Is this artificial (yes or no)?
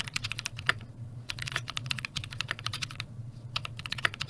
yes